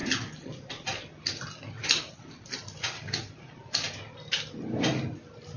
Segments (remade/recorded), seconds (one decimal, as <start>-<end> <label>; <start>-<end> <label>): 0.0-5.6 recorded